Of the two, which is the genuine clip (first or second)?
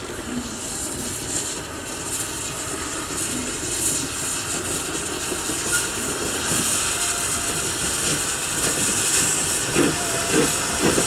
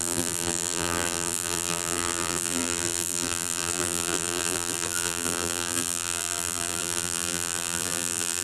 first